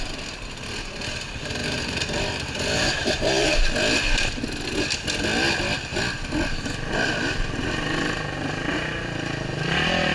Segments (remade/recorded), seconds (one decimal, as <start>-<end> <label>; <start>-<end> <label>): 0.0-1.6 recorded; 1.6-3.6 remade; 3.6-10.1 recorded